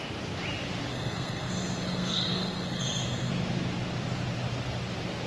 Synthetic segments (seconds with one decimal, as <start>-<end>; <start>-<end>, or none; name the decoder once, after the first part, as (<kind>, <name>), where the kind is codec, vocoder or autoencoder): 0.9-3.3 (codec, SNAC)